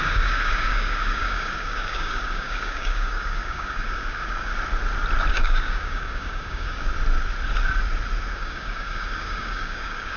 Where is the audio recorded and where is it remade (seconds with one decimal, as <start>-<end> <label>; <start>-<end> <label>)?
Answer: 0.0-4.5 remade; 4.5-5.3 recorded; 5.3-6.9 remade; 6.9-8.3 recorded; 8.3-10.2 remade